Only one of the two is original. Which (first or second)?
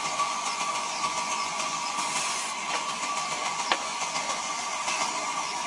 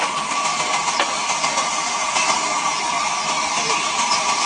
second